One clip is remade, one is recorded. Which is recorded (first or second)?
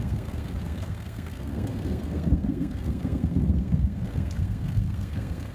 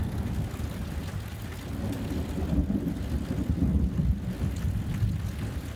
second